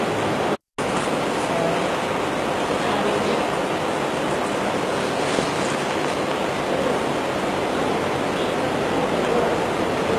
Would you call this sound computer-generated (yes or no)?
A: no